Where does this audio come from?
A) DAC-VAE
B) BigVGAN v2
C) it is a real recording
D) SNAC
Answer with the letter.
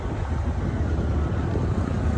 C